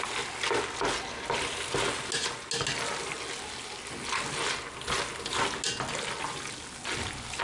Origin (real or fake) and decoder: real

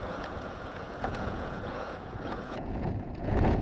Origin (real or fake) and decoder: fake, vocoder, Vocos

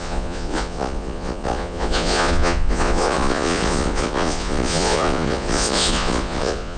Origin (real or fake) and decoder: fake, vocoder, Vocos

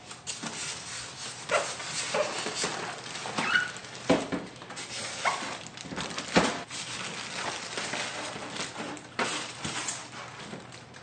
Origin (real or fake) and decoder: real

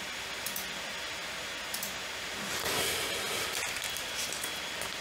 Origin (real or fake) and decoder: real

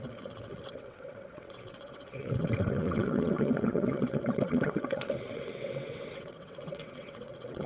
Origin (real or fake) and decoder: fake, vocoder, WaveNeXt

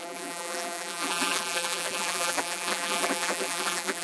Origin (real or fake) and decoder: fake, vocoder, BigVGAN v2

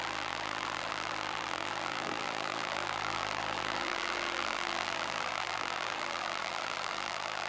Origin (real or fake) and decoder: fake, vocoder, BigVGAN v2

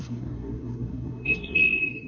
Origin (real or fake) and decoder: fake, codec, SNAC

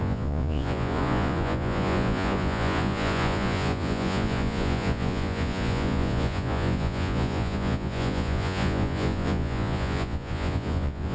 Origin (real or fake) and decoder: fake, vocoder, Vocos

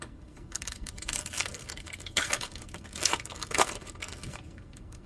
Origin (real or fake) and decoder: fake, codec, SNAC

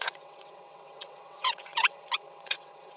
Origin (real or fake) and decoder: fake, vocoder, WaveNeXt